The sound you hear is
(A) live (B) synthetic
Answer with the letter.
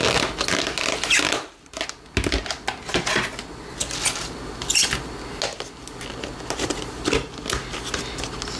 A